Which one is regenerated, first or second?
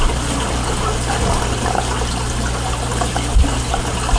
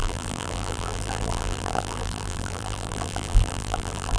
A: second